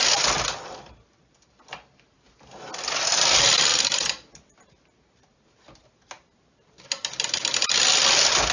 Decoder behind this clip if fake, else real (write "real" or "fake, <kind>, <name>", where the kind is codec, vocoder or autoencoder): real